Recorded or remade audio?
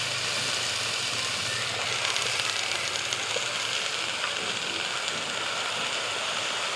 recorded